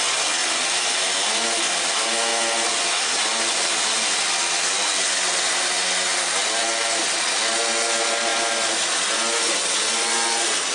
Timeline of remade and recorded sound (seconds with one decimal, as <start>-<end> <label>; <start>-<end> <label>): 0.0-0.4 recorded; 0.4-1.1 remade; 1.1-6.1 recorded; 6.1-7.0 remade; 7.0-8.3 recorded; 8.3-9.1 remade; 9.1-10.7 recorded